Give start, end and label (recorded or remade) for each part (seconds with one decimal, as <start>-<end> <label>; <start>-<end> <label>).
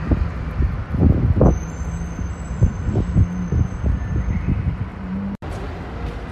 0.0-6.3 recorded